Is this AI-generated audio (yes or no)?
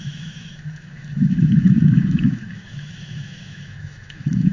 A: yes